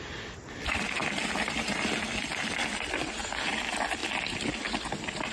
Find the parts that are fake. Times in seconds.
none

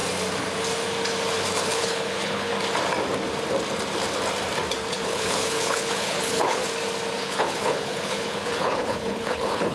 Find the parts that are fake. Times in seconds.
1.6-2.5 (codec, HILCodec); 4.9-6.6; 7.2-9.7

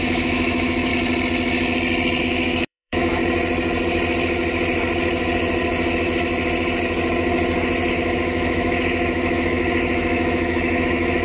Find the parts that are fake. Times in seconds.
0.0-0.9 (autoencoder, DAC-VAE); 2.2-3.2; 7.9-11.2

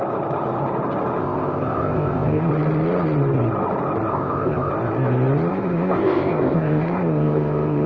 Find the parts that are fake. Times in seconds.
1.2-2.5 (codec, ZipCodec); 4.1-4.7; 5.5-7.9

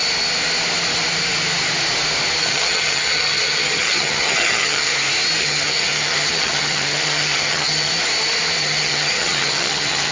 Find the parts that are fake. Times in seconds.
2.4-4.9 (vocoder, HiFi-GAN); 5.4-7.9; 8.6-10.1

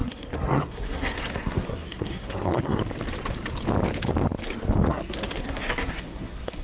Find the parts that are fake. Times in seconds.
0.0-2.8 (codec, SNAC); 4.9-6.6